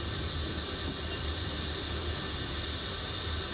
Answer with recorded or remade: recorded